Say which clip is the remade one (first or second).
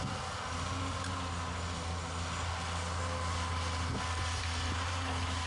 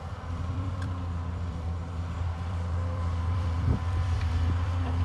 second